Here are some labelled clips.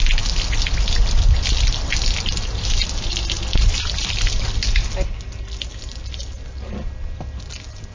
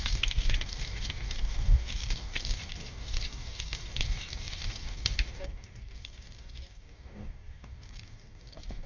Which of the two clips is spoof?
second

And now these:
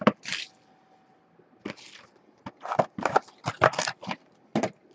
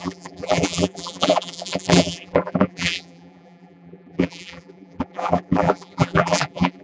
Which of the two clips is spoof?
second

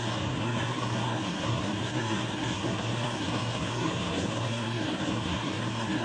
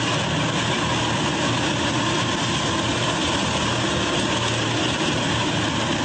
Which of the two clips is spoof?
first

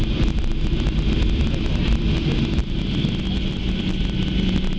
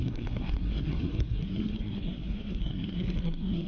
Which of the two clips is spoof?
second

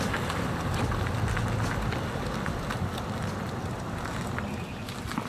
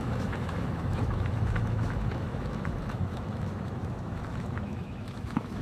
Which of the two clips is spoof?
second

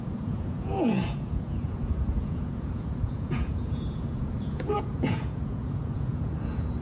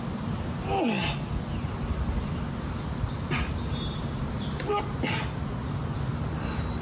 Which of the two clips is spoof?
first